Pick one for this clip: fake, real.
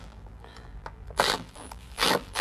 fake